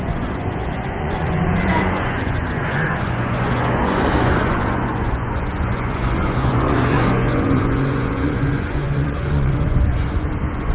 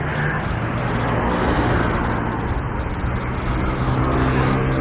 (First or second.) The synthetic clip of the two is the first